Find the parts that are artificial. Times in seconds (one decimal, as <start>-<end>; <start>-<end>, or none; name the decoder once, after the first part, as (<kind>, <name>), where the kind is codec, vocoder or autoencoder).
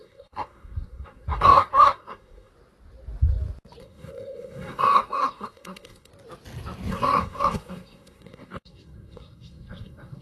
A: 0.0-2.5 (codec, SNAC); 3.8-6.1; 6.9-10.2